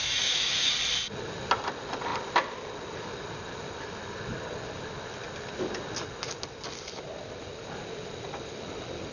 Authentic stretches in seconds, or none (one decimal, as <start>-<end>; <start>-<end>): 0.7-9.1

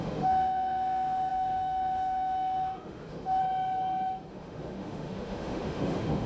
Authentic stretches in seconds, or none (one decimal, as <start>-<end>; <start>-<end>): 3.4-4.3

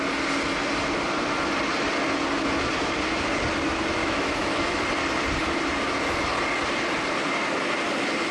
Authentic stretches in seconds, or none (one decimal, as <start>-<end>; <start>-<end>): 0.0-4.0; 4.8-8.3

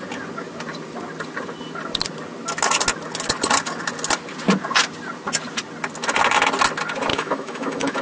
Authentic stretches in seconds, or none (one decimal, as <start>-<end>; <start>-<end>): 0.0-7.1

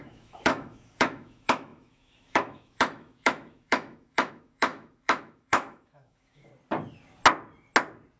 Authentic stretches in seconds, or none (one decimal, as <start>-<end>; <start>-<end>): 6.5-8.2